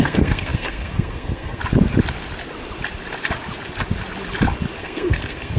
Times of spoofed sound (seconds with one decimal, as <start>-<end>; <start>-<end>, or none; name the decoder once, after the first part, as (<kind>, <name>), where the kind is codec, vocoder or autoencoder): 0.0-1.6 (codec, SNAC); 4.8-5.6